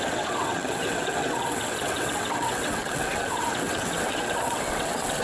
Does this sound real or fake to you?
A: fake